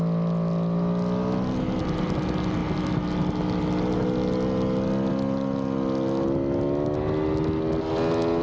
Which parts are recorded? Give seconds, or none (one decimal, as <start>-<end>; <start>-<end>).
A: 0.0-8.4